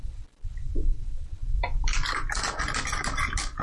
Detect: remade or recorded recorded